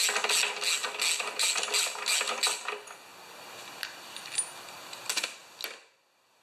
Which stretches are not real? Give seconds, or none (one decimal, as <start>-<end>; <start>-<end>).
none